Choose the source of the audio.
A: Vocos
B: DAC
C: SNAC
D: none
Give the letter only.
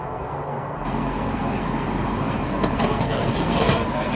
C